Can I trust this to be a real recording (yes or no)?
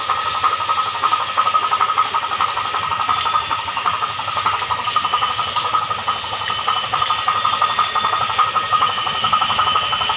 yes